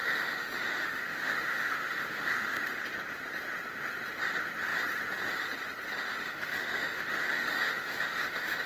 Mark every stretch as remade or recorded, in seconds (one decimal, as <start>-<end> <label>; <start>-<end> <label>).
0.0-2.8 remade; 2.8-6.2 recorded; 6.2-8.7 remade